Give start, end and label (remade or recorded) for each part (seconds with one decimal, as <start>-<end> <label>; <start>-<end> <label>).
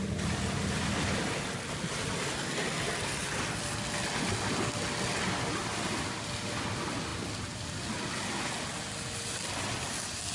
0.0-10.3 recorded